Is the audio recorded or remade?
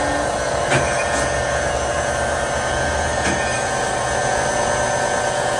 recorded